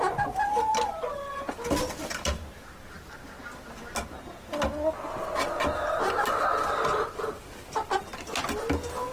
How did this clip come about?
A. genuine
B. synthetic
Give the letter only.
A